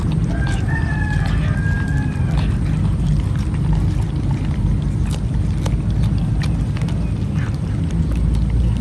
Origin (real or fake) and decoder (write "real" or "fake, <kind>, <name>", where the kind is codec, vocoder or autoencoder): real